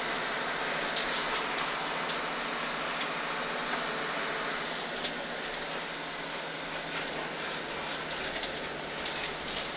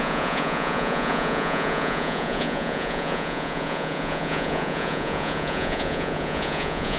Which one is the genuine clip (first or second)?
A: first